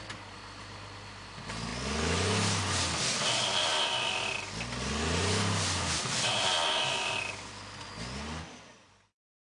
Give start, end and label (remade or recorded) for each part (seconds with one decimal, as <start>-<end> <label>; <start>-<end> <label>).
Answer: 0.0-9.5 recorded